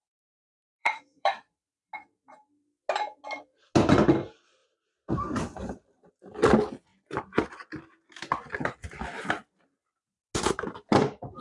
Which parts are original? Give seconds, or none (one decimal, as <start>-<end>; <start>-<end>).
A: 0.0-0.8; 1.9-4.6; 6.1-11.4